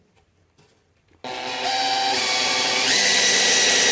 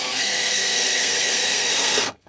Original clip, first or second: first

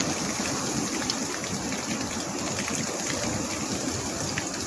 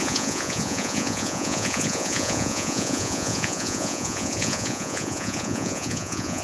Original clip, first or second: first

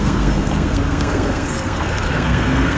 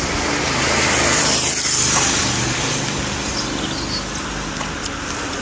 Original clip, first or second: second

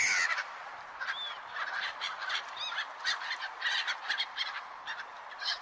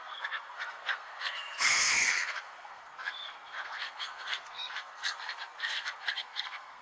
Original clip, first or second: first